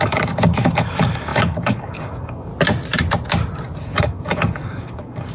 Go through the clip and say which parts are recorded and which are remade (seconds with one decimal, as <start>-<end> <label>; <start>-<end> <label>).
0.0-2.5 remade; 2.5-3.8 recorded; 3.8-5.3 remade